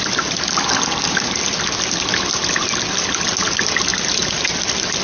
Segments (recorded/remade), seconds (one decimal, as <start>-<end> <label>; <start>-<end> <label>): 0.0-5.0 recorded

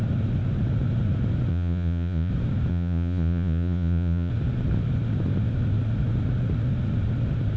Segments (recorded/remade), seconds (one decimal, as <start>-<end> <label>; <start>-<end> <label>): 0.0-1.5 recorded; 1.5-2.3 remade; 2.3-2.7 recorded; 2.7-4.3 remade; 4.3-7.6 recorded